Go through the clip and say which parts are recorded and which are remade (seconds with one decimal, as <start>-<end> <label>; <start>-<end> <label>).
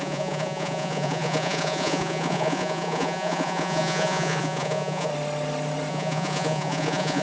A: 0.0-5.1 remade; 5.1-5.9 recorded; 5.9-7.2 remade